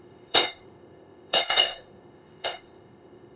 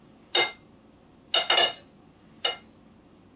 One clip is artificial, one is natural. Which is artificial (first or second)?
first